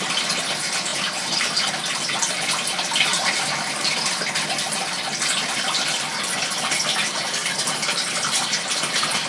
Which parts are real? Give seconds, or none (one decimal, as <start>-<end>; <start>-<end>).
0.0-0.9; 1.7-3.1; 4.2-9.3